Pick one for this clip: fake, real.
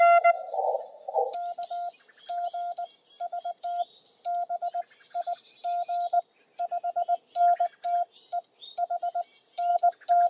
real